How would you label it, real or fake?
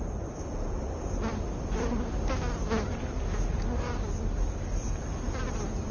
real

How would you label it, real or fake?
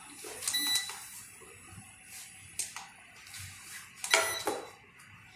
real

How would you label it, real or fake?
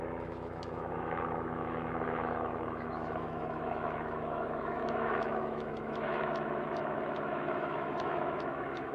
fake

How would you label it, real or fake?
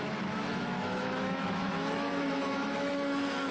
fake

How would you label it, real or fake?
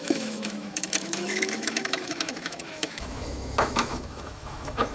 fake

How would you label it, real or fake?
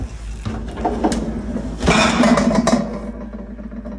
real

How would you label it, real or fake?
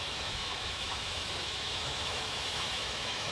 fake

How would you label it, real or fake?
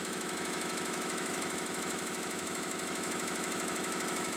fake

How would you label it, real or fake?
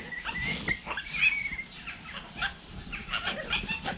real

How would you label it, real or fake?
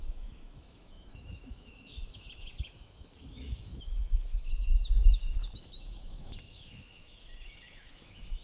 fake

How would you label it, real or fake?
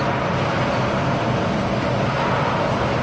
real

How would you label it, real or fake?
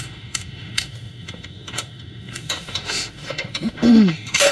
fake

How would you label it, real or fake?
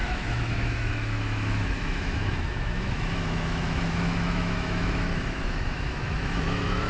fake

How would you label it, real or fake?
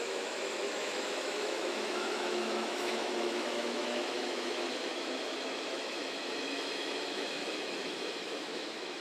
fake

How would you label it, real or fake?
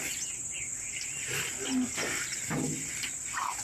real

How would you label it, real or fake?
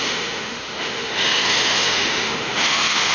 fake